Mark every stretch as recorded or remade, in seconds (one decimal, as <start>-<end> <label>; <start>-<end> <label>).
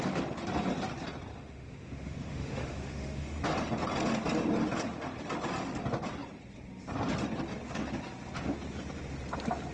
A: 0.0-1.3 recorded; 1.3-3.4 remade; 3.4-9.7 recorded